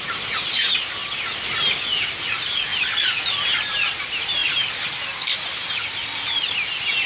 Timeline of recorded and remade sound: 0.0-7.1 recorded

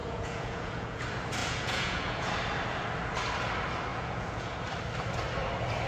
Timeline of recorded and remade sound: 0.0-1.0 remade; 1.0-1.4 recorded; 1.4-2.3 remade; 2.3-3.9 recorded; 3.9-4.5 remade; 4.5-5.9 recorded

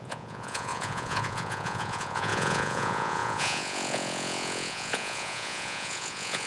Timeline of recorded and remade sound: 0.0-6.5 remade

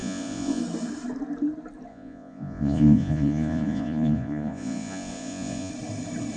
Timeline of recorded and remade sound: 0.0-0.6 remade; 0.6-1.9 recorded; 1.9-5.7 remade; 5.7-6.4 recorded

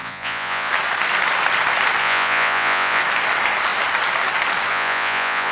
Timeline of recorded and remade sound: 0.0-0.7 remade; 0.7-2.0 recorded; 2.0-3.0 remade; 3.0-4.7 recorded; 4.7-5.5 remade

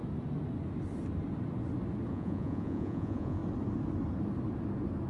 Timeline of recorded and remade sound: 0.0-2.1 recorded; 2.1-3.4 remade; 3.4-5.1 recorded

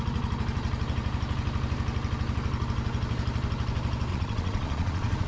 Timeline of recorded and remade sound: 0.0-4.1 recorded; 4.1-5.3 remade